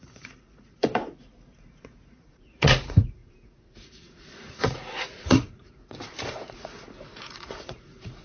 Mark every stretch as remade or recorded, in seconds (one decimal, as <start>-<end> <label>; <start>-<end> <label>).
0.0-8.2 remade

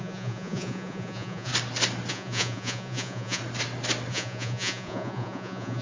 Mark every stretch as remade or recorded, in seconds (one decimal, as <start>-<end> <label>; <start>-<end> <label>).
0.0-1.5 remade; 1.5-2.1 recorded; 2.1-3.4 remade; 3.4-4.1 recorded; 4.1-5.8 remade

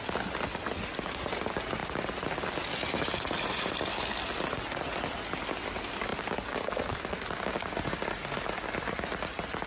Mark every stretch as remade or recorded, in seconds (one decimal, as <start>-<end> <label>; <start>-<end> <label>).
0.0-9.7 recorded

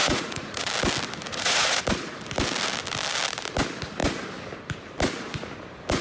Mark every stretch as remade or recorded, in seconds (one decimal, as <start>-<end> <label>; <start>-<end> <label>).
0.0-0.7 remade; 0.7-1.3 recorded; 1.3-1.8 remade; 1.8-6.0 recorded

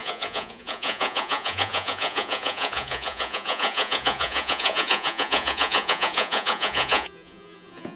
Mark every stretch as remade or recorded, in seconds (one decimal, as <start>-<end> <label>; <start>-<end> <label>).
0.0-8.0 remade

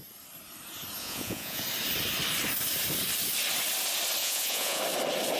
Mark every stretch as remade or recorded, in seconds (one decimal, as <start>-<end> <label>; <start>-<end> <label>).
0.0-1.0 recorded; 1.0-1.6 remade; 1.6-4.2 recorded; 4.2-4.8 remade; 4.8-5.4 recorded